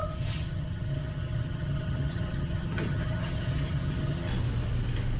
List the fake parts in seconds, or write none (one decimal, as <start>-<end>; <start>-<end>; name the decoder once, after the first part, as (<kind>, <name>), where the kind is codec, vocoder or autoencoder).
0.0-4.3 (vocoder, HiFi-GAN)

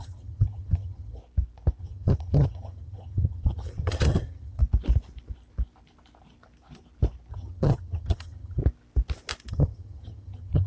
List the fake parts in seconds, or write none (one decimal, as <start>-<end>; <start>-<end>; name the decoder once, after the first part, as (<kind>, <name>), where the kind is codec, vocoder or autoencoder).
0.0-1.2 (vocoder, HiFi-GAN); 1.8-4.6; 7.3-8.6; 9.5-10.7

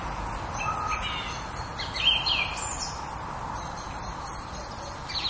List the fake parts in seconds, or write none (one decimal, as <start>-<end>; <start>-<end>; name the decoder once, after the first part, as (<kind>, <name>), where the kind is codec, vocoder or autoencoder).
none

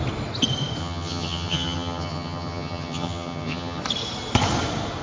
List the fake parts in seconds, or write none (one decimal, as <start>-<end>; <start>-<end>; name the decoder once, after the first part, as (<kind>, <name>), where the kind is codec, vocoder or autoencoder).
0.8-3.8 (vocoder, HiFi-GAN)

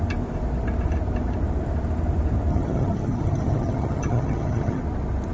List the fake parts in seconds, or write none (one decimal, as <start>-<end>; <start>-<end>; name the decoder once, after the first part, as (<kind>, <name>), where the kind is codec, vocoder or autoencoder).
2.5-4.8 (vocoder, HiFi-GAN)